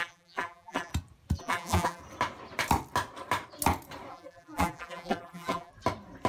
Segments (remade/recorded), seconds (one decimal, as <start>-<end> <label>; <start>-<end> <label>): 0.0-0.9 remade; 0.9-1.4 recorded; 1.4-2.0 remade; 2.0-4.1 recorded; 4.1-5.7 remade; 5.7-6.3 recorded